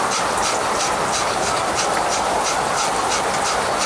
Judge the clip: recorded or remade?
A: recorded